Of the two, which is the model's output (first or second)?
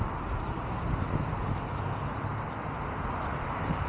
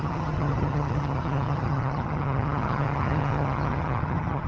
second